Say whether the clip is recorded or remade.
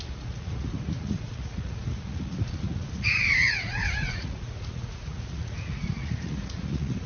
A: remade